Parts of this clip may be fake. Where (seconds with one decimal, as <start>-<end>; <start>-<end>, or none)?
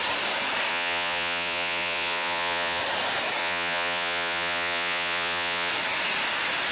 0.7-2.8; 3.4-5.7